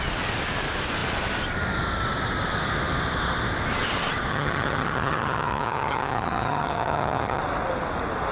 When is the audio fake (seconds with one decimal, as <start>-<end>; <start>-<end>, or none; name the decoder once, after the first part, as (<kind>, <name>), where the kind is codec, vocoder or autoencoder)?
4.3-7.4 (vocoder, HiFi-GAN)